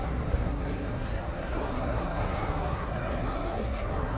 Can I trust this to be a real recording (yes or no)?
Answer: no